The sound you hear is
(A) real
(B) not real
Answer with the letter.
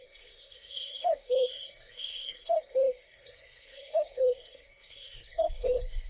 B